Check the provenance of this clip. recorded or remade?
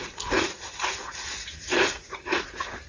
remade